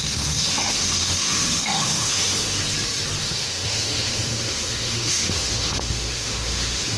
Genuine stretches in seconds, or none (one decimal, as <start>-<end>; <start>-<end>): 2.6-3.2